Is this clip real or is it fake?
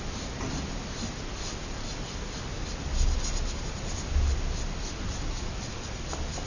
real